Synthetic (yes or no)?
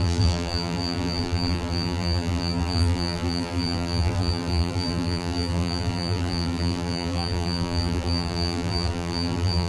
yes